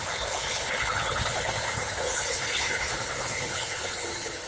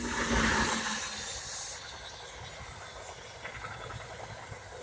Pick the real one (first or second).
second